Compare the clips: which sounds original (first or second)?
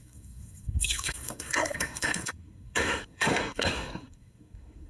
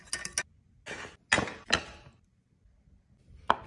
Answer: second